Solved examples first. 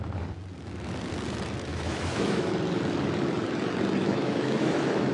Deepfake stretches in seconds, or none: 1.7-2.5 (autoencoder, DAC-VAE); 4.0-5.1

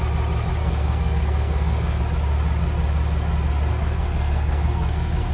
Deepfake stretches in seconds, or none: 0.6-2.0 (codec, SNAC); 3.7-5.3

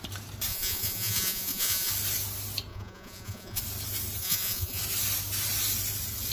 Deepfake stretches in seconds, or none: 0.5-1.9 (vocoder, Vocos); 2.7-3.6; 4.2-4.8

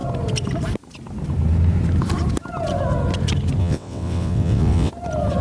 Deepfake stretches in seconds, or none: 3.6-4.9 (vocoder, WaveNeXt)

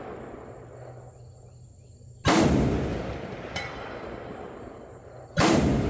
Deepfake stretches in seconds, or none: 2.9-5.9 (vocoder, BigVGAN v2)

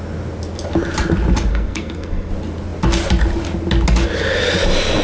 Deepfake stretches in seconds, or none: 1.5-2.3 (codec, SNAC)

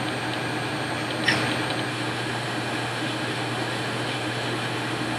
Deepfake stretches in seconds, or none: 1.9-5.2 (autoencoder, DAC-VAE)